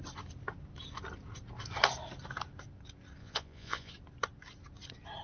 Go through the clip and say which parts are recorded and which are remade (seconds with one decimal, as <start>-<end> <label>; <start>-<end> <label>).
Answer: 0.0-3.2 recorded; 3.2-3.9 remade; 3.9-5.2 recorded